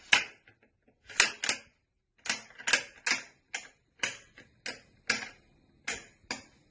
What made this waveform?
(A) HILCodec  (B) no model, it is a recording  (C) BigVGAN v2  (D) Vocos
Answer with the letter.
B